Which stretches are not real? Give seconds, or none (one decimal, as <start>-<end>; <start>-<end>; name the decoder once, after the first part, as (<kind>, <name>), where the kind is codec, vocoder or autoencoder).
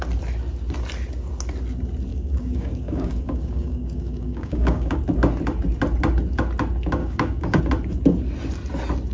2.1-5.0 (codec, DAC); 7.0-7.6